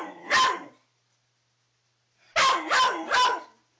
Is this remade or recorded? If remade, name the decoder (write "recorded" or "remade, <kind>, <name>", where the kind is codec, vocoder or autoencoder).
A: recorded